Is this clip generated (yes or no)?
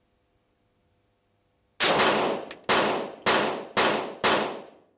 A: no